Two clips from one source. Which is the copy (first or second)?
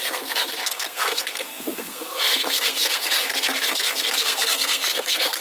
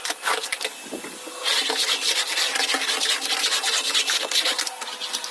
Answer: first